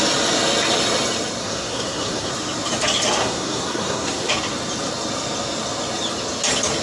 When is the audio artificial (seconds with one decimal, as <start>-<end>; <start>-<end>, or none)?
1.4-2.3; 3.2-4.3